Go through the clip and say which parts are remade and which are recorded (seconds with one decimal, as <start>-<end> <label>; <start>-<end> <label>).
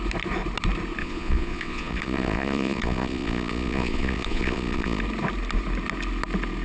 0.0-1.0 recorded; 1.0-5.0 remade; 5.0-6.6 recorded